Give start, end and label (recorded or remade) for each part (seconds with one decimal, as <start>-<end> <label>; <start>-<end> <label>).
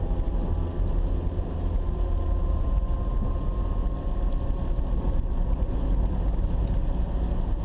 0.0-7.6 recorded